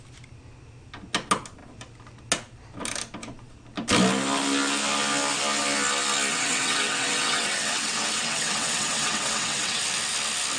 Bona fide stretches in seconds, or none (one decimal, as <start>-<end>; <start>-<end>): 0.0-6.3; 9.8-10.6